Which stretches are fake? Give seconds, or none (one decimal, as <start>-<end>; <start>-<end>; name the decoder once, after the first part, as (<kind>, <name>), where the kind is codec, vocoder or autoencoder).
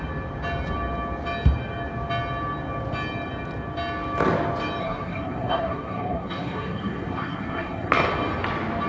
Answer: 4.8-7.9 (codec, SNAC)